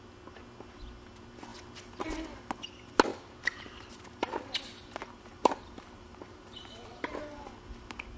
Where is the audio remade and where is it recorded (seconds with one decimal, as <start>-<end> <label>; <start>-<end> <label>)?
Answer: 0.0-3.1 recorded; 3.1-4.5 remade; 4.5-5.0 recorded; 5.0-7.1 remade; 7.1-8.2 recorded